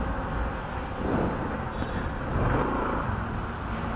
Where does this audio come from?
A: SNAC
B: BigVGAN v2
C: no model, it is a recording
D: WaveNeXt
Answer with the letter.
C